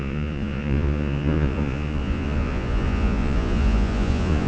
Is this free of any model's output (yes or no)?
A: no